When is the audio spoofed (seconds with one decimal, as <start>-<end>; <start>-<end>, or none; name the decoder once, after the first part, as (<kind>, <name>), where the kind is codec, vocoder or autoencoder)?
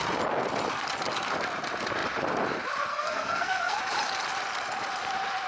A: 2.9-3.8 (codec, SNAC)